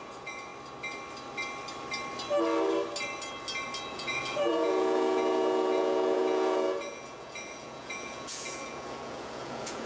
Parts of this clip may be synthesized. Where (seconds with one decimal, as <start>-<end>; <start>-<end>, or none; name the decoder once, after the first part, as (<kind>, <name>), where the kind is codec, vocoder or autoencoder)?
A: 0.0-0.5 (vocoder, Vocos); 3.9-9.9